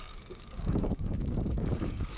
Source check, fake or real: fake